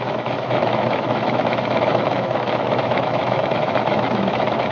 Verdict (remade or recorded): remade